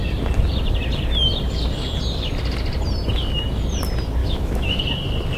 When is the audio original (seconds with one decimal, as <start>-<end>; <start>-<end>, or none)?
0.0-4.2; 4.8-5.4